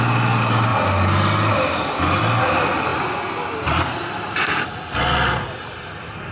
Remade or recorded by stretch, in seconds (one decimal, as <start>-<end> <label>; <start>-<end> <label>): 0.0-6.3 recorded